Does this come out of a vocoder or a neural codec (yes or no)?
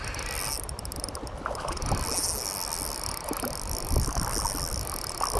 no